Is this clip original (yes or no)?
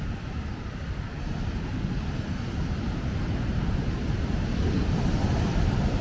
yes